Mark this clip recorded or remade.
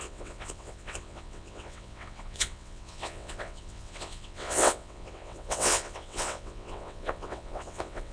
remade